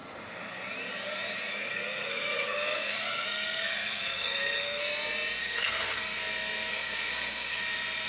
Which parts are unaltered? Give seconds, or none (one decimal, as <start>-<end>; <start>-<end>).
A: 0.0-1.5; 4.8-5.4; 6.2-6.7; 7.6-8.1